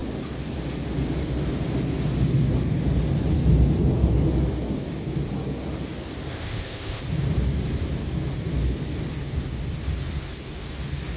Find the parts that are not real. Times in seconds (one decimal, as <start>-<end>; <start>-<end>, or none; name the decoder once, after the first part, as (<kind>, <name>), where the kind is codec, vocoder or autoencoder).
6.3-7.0 (codec, ZipCodec)